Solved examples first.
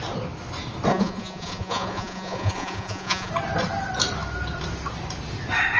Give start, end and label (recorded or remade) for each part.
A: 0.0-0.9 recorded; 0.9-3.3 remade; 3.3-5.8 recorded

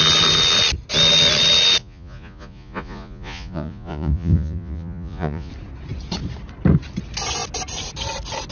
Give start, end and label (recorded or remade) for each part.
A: 0.0-1.8 recorded; 1.8-5.5 remade; 5.5-8.5 recorded

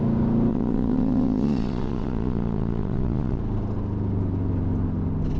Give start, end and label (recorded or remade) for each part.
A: 0.0-0.5 recorded; 0.5-3.4 remade; 3.4-5.4 recorded

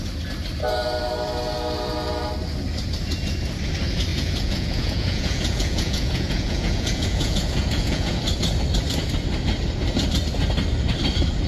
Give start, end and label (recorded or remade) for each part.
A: 0.0-4.1 recorded; 4.1-8.2 remade; 8.2-11.5 recorded

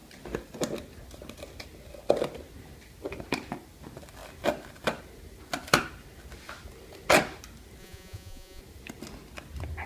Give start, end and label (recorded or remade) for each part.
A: 0.0-7.8 recorded; 7.8-8.6 remade; 8.6-9.9 recorded